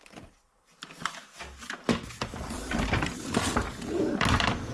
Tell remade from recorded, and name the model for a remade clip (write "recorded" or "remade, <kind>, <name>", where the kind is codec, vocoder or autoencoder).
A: recorded